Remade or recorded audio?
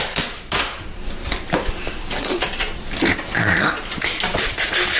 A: remade